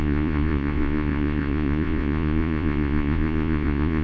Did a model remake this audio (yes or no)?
yes